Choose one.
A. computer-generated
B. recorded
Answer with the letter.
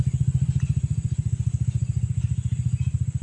B